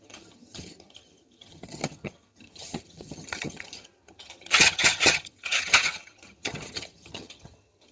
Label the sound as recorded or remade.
remade